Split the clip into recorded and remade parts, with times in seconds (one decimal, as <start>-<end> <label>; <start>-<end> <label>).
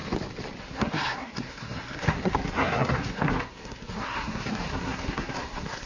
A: 0.0-0.6 recorded; 0.6-5.9 remade